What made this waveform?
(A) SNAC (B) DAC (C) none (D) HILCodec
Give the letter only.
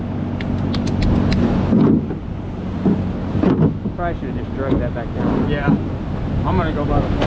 C